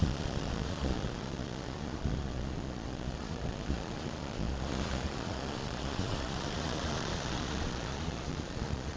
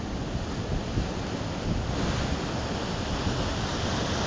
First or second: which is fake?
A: first